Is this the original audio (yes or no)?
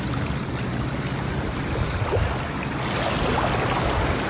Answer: yes